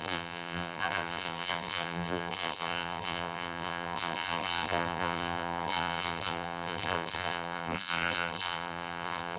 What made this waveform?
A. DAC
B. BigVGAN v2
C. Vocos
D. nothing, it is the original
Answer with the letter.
B